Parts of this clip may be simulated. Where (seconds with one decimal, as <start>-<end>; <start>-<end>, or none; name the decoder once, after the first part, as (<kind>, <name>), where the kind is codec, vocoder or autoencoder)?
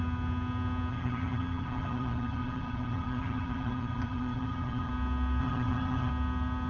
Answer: 0.9-4.9 (vocoder, HiFi-GAN); 5.4-6.1